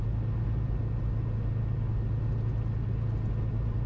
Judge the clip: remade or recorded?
recorded